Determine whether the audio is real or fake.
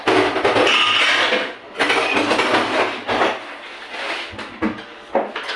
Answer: real